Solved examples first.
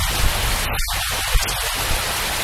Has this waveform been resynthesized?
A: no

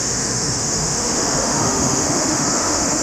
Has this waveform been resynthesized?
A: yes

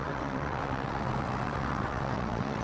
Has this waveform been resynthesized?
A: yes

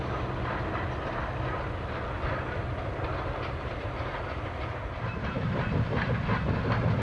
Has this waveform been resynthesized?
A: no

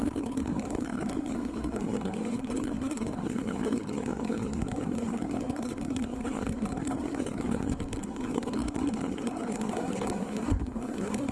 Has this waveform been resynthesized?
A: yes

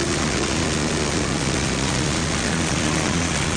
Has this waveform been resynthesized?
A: yes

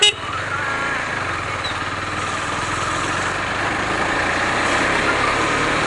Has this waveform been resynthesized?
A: no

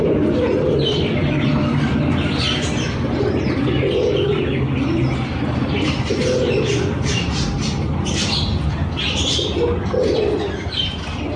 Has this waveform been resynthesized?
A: no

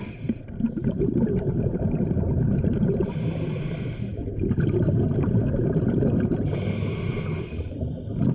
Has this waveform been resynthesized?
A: no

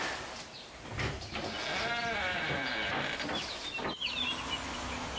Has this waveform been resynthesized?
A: no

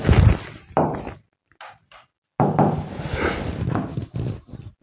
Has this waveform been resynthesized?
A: no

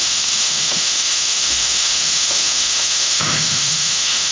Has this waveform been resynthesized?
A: yes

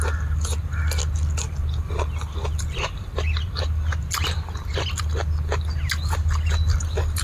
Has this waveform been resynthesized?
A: no